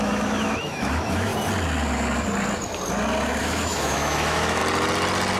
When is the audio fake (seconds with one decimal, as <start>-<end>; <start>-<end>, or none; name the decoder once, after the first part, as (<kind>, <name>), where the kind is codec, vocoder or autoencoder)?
0.0-1.3 (autoencoder, DAC-VAE); 3.4-4.6